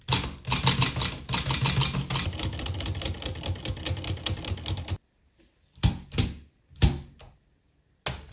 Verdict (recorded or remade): recorded